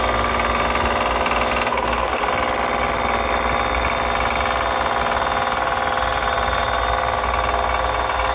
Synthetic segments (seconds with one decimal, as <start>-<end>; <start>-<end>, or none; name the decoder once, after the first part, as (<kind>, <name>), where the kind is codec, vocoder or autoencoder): 1.7-2.3 (codec, SNAC)